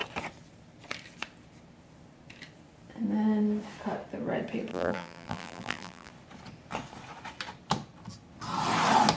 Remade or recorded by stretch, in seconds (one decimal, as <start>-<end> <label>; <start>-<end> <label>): 0.0-4.7 recorded; 4.7-6.1 remade; 6.1-9.2 recorded